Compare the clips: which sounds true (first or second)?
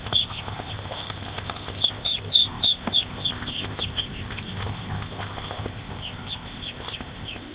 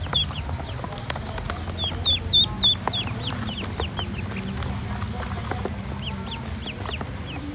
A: second